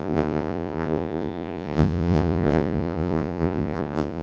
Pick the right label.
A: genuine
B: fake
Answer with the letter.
B